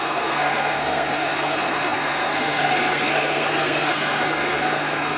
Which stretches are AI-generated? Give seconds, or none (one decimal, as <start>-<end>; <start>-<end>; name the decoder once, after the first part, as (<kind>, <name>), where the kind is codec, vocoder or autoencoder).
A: 0.0-5.2 (codec, SNAC)